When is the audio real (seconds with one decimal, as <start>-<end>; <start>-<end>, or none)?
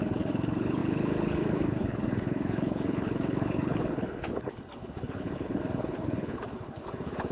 none